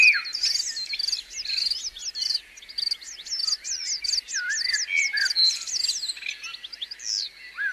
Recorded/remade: recorded